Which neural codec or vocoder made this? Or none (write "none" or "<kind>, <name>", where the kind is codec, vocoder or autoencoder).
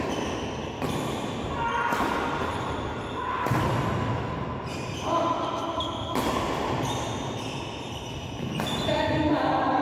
none